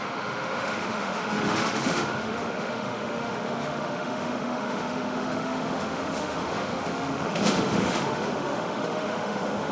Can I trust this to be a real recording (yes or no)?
no